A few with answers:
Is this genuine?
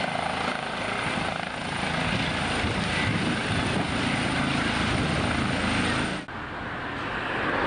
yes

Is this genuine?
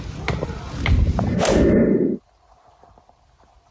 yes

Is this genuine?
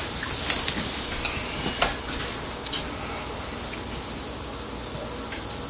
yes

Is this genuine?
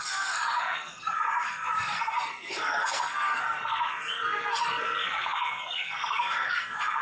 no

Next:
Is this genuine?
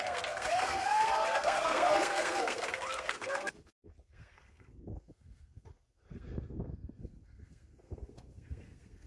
no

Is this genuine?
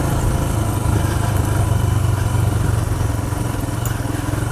yes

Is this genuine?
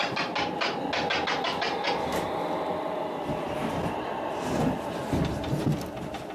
yes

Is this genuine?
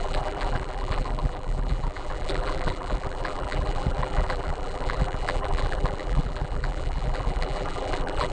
no